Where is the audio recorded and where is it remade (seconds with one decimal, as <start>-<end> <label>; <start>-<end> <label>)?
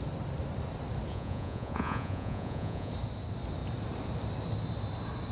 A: 0.0-1.1 recorded; 1.1-2.9 remade; 2.9-5.3 recorded